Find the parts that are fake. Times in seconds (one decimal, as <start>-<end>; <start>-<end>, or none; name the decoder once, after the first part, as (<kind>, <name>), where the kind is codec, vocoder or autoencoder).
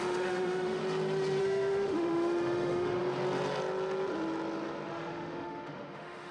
0.0-0.8 (autoencoder, DAC-VAE); 1.4-3.0; 4.9-6.3